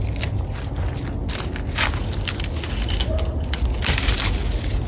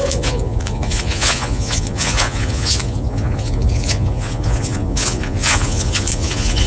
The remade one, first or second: second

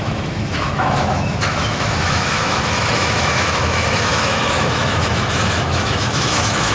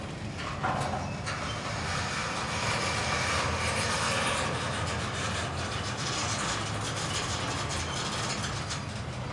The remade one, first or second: first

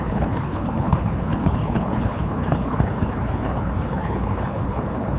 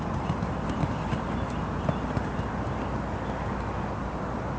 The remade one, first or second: first